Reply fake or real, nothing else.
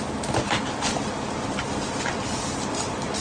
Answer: real